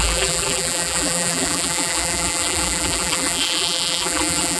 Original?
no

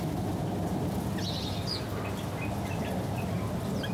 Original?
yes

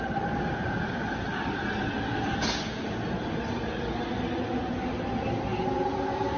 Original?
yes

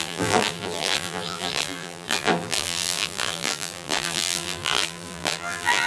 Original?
no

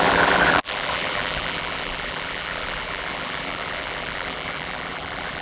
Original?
no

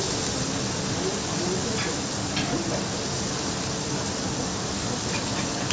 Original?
no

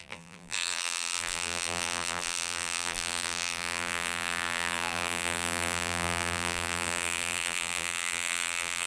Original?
no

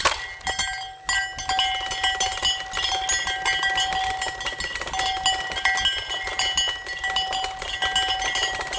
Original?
yes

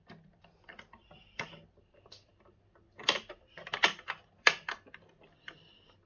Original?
no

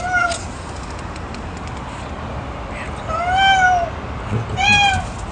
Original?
yes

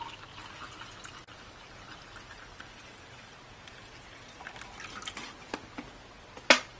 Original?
yes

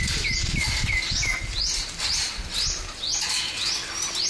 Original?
yes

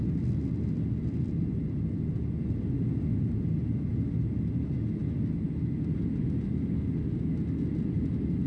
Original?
yes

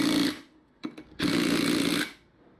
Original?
yes